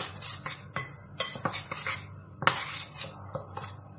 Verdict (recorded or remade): recorded